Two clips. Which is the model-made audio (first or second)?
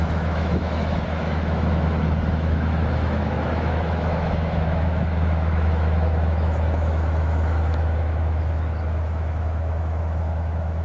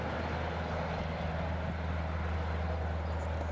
first